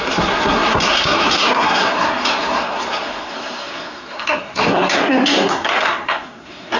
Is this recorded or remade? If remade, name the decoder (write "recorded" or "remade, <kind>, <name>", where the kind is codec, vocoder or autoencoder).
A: remade, codec, SNAC